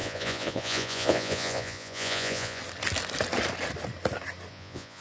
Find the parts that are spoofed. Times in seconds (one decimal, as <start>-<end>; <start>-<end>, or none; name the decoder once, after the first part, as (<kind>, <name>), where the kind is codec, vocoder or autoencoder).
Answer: 0.0-2.6 (vocoder, Vocos); 4.5-5.0